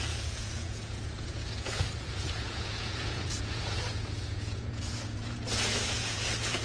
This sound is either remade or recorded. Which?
remade